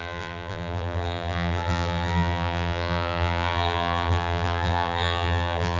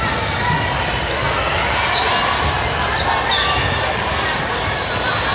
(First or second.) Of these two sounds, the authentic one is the second